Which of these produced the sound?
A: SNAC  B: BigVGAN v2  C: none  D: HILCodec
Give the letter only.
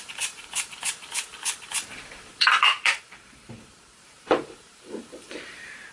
B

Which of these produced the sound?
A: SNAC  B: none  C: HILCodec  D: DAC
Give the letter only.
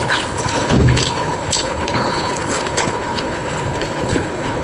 C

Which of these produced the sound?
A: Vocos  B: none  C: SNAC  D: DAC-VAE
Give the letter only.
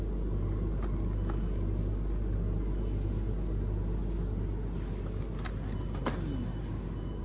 B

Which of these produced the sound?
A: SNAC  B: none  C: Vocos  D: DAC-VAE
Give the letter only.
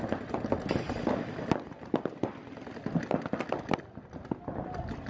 B